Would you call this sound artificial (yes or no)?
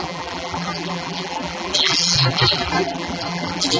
yes